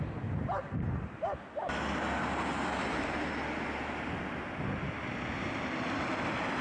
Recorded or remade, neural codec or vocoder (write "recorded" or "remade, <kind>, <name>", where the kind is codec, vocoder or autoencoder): recorded